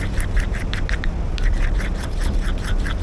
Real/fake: real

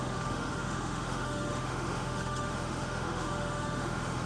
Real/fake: fake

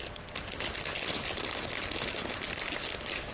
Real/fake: real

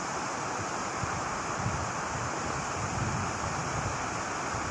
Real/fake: real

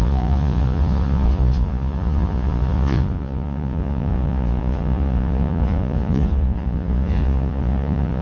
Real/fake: fake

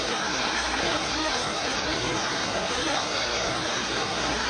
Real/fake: fake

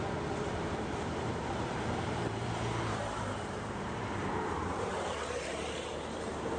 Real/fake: fake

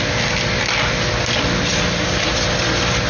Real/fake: real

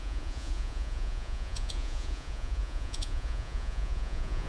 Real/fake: fake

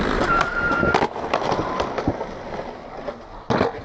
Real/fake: real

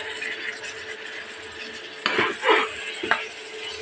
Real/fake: real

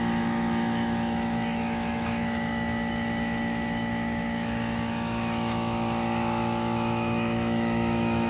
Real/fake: fake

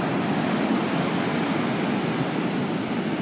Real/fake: real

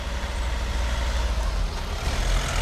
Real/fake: real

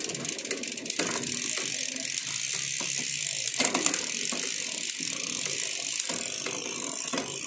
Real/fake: real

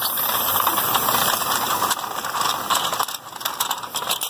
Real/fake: real